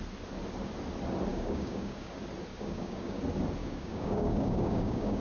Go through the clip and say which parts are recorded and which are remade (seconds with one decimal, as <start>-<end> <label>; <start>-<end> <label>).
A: 0.0-1.3 recorded; 1.3-2.1 remade; 2.1-2.5 recorded; 2.5-3.2 remade; 3.2-3.6 recorded; 3.6-5.2 remade